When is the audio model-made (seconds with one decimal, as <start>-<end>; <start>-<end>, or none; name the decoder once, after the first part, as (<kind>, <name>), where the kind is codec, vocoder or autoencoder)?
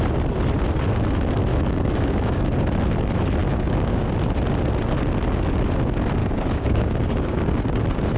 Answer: 1.5-2.4 (codec, DAC); 3.4-4.1; 6.2-7.6